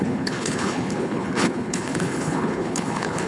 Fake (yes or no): yes